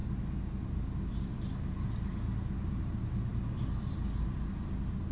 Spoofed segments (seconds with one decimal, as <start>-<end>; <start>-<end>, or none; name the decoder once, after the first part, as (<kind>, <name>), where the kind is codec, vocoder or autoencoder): none